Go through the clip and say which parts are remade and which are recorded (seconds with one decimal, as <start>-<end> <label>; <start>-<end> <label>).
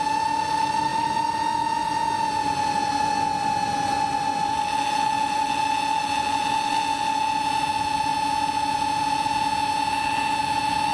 0.0-10.9 recorded